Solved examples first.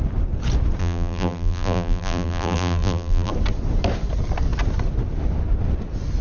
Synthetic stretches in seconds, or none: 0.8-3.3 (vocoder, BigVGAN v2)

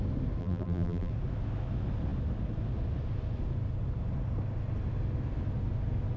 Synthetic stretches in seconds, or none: 0.4-1.1 (vocoder, BigVGAN v2)

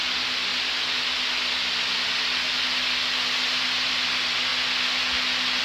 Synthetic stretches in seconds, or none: none

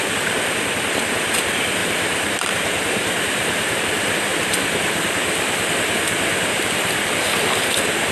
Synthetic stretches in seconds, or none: 1.8-3.8 (vocoder, BigVGAN v2)